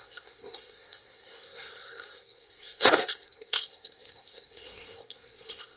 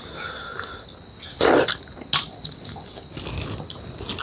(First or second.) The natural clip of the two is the second